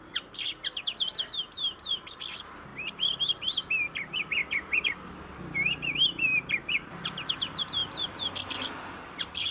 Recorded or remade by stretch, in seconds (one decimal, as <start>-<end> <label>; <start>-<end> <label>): 0.0-4.4 recorded; 4.4-6.6 remade; 6.6-9.5 recorded